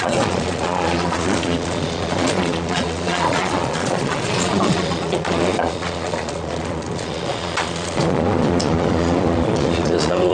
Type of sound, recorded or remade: remade